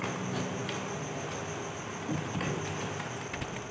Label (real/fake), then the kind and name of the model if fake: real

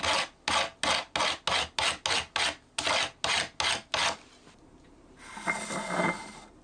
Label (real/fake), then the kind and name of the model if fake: real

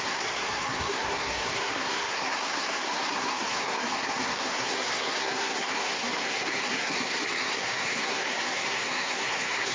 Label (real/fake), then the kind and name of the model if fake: fake, codec, SNAC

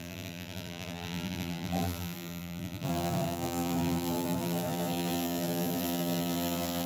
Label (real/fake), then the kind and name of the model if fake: fake, vocoder, BigVGAN v2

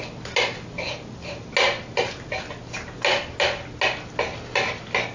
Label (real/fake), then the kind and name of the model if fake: real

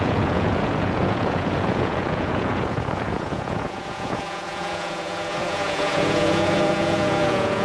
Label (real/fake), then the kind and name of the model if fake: fake, vocoder, Vocos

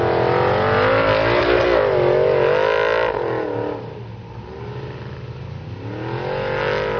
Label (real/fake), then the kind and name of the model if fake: real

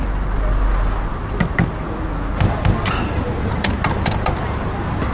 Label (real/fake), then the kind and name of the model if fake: real